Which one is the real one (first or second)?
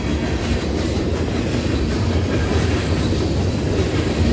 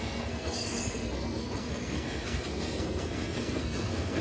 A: first